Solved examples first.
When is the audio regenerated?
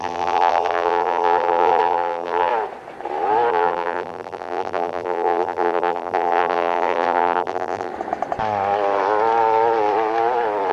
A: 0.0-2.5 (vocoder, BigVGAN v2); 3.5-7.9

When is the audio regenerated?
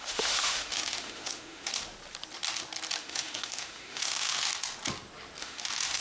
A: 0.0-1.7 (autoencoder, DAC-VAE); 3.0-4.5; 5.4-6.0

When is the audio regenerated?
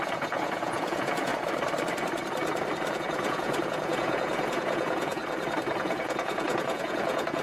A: 0.0-1.3 (vocoder, Vocos); 2.9-5.2; 5.8-7.4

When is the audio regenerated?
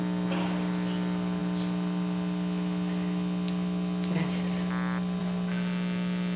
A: none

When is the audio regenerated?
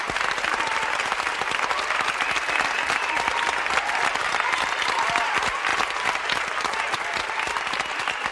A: none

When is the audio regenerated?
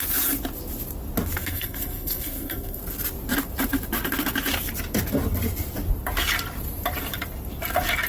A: 1.4-2.8 (codec, SNAC)